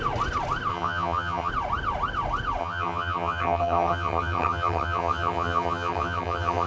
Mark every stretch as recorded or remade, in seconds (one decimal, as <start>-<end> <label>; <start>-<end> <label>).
0.0-0.7 recorded; 0.7-1.5 remade; 1.5-2.6 recorded; 2.6-6.7 remade